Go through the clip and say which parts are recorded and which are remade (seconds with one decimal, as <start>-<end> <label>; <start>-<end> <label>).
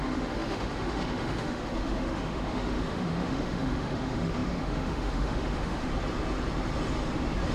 0.0-5.9 remade; 5.9-7.5 recorded